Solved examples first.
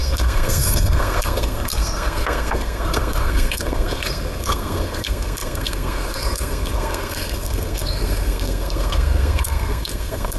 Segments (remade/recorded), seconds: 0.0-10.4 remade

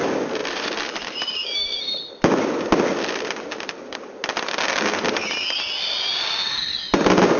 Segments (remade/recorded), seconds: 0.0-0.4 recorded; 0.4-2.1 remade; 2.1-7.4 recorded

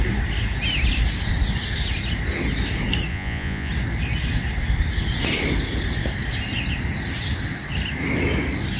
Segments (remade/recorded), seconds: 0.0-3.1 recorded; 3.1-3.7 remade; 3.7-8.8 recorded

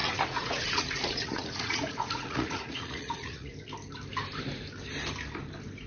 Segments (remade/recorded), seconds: 0.0-3.5 remade; 3.5-5.9 recorded